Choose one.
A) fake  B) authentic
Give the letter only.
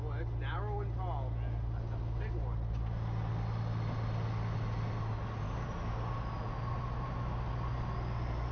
B